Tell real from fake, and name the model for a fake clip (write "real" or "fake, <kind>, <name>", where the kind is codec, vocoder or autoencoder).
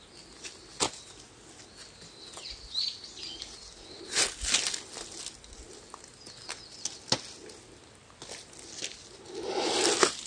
real